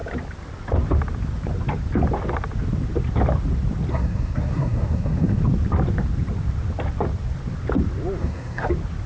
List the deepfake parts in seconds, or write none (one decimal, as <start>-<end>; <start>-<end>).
3.9-5.4; 8.2-8.7